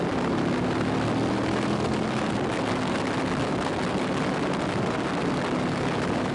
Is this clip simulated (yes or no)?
no